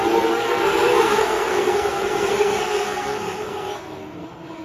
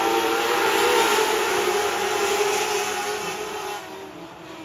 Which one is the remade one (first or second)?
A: first